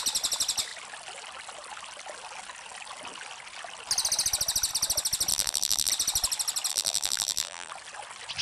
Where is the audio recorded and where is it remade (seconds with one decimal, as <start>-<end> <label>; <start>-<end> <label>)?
0.0-5.3 recorded; 5.3-5.9 remade; 5.9-6.7 recorded; 6.7-7.7 remade; 7.7-8.4 recorded